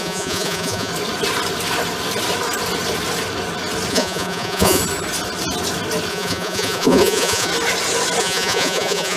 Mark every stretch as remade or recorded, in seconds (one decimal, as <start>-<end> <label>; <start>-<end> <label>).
0.0-0.9 remade; 0.9-3.9 recorded; 3.9-4.8 remade; 4.8-6.1 recorded; 6.1-7.5 remade; 7.5-8.2 recorded; 8.2-9.2 remade

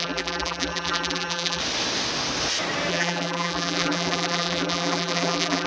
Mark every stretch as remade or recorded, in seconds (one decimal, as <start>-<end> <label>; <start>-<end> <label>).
0.0-1.6 remade; 1.6-2.9 recorded; 2.9-5.7 remade

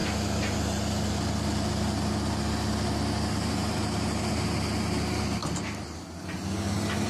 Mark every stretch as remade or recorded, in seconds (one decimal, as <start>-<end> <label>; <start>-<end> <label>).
0.0-7.1 recorded

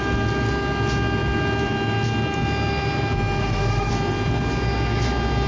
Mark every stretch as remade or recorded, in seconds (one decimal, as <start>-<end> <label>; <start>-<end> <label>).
0.0-3.4 recorded; 3.4-3.9 remade; 3.9-5.5 recorded

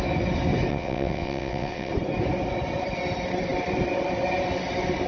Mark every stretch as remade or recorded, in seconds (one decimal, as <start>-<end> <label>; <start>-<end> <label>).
0.0-0.7 recorded; 0.7-1.9 remade; 1.9-5.1 recorded

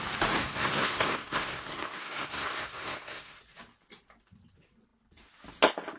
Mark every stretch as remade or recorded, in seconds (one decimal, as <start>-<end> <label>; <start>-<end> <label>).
0.0-0.4 recorded; 0.4-3.4 remade; 3.4-6.0 recorded

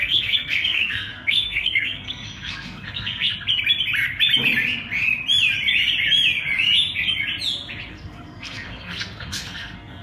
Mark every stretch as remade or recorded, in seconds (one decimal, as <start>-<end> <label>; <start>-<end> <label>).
0.0-3.3 remade; 3.3-7.9 recorded; 7.9-10.0 remade

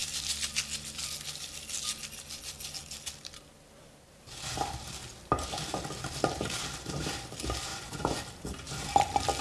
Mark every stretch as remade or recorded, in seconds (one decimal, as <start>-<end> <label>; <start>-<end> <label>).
0.0-7.7 recorded; 7.7-8.2 remade; 8.2-9.4 recorded